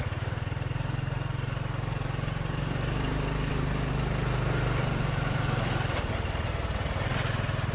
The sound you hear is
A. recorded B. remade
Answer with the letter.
A